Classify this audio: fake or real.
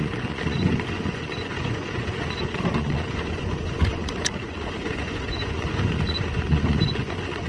fake